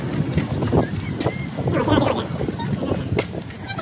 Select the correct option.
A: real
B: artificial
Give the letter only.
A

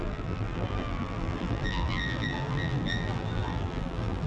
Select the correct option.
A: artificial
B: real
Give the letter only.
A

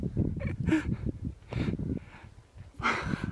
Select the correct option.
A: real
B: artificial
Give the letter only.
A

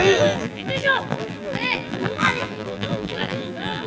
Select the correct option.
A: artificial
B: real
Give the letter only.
A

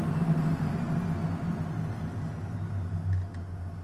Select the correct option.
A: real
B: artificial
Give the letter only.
A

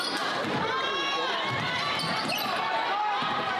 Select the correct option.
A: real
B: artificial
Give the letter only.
A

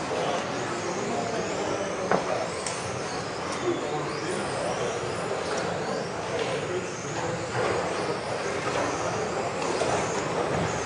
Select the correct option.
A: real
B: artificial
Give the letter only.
A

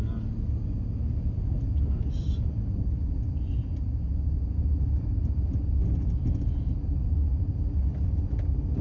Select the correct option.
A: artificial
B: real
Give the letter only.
B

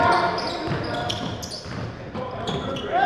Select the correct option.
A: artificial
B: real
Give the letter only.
B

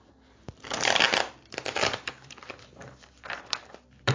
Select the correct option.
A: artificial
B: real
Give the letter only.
A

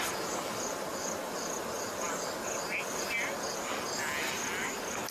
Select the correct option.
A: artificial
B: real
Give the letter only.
A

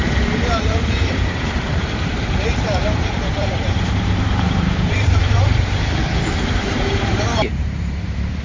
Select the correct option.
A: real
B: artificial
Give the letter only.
B